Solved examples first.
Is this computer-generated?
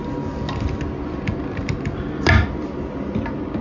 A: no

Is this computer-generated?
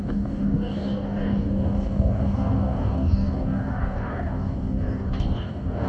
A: yes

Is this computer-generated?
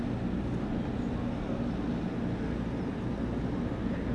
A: no